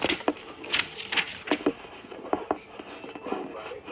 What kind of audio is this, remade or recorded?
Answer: recorded